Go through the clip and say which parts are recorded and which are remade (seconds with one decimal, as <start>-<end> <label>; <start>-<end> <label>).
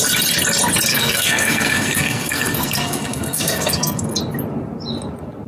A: 0.0-0.9 recorded; 0.9-4.2 remade; 4.2-5.5 recorded